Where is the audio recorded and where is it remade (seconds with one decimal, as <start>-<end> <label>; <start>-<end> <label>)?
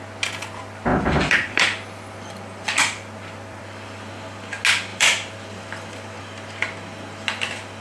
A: 0.0-0.9 recorded; 0.9-4.1 remade; 4.1-4.9 recorded; 4.9-6.2 remade; 6.2-7.8 recorded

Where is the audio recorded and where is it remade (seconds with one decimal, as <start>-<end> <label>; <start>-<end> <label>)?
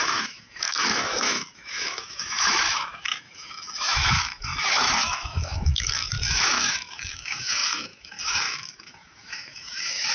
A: 0.0-10.1 remade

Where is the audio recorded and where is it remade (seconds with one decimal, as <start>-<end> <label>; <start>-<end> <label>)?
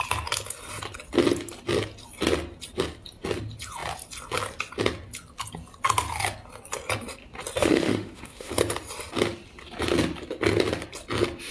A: 0.0-7.6 recorded; 7.6-8.5 remade; 8.5-11.5 recorded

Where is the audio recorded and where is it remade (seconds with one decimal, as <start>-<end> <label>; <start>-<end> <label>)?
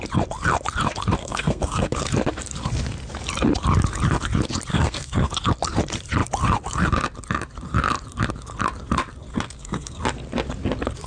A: 0.0-1.2 recorded; 1.2-2.1 remade; 2.1-4.7 recorded; 4.7-5.3 remade; 5.3-9.3 recorded; 9.3-10.0 remade; 10.0-11.1 recorded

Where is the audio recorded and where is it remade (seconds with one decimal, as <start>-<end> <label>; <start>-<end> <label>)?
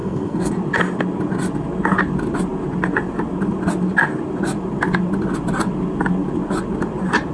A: 0.0-0.5 remade; 0.5-7.3 recorded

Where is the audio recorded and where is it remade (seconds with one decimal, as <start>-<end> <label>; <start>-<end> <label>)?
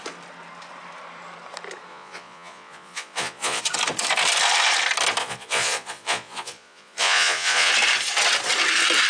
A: 0.0-1.9 recorded; 1.9-3.6 remade; 3.6-5.2 recorded; 5.2-7.7 remade; 7.7-9.1 recorded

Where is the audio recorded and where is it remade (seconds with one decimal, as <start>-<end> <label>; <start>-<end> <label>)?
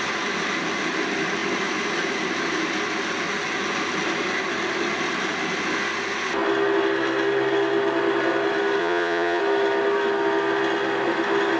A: 0.0-8.8 recorded; 8.8-9.4 remade; 9.4-11.6 recorded